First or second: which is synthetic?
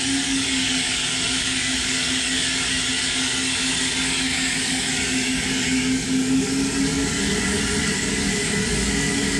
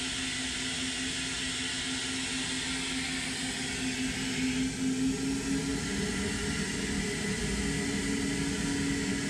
first